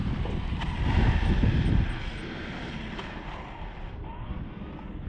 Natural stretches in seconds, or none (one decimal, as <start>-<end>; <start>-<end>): 0.0-5.1